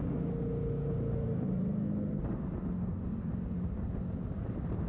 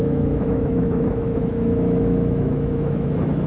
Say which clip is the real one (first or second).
first